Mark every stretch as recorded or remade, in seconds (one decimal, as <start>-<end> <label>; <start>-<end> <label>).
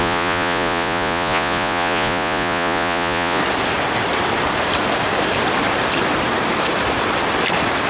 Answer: 0.0-3.4 remade; 3.4-7.9 recorded